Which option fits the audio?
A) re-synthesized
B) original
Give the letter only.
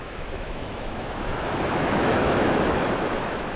A